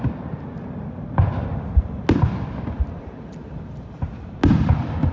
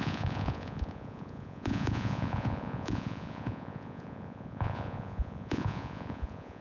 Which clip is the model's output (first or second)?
second